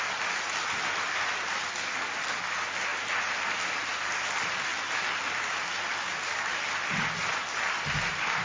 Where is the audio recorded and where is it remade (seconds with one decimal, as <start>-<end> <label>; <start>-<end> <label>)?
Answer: 0.0-8.4 recorded